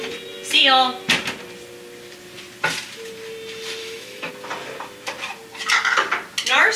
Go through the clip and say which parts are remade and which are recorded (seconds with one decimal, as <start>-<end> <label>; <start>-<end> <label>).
0.0-3.8 recorded; 3.8-4.3 remade; 4.3-6.8 recorded